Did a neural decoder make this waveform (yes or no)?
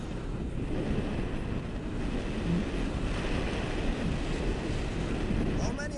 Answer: no